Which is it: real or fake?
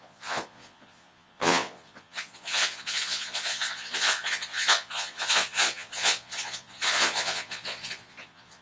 fake